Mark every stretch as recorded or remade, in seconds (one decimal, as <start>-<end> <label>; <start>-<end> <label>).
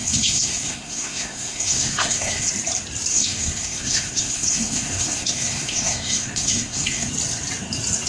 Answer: 0.0-2.5 remade; 2.5-3.1 recorded; 3.1-7.1 remade; 7.1-8.1 recorded